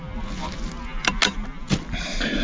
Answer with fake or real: real